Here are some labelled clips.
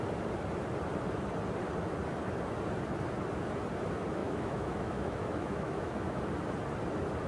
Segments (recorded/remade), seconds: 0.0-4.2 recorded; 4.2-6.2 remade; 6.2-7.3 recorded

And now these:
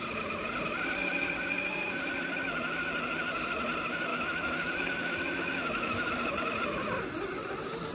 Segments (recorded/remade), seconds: 0.0-4.1 recorded; 4.1-6.1 remade; 6.1-7.9 recorded

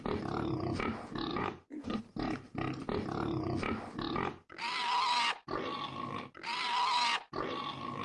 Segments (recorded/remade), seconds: 0.0-1.3 recorded; 1.3-2.0 remade; 2.0-8.0 recorded

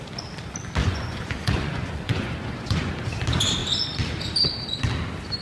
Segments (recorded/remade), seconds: 0.0-0.8 recorded; 0.8-2.9 remade; 2.9-5.4 recorded

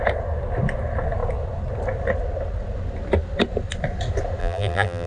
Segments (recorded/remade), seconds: 0.0-4.4 recorded; 4.4-5.1 remade

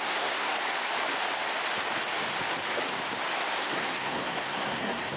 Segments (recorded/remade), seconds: 0.0-0.5 remade; 0.5-3.6 recorded; 3.6-5.2 remade